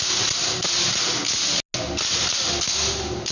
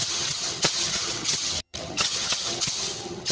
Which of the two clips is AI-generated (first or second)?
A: second